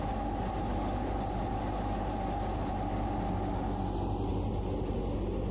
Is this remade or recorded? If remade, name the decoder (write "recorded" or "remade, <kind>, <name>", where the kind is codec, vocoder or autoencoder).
recorded